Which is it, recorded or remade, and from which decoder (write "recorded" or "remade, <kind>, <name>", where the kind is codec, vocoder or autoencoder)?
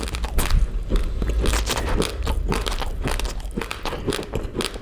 recorded